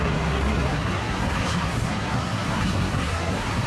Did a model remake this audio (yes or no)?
yes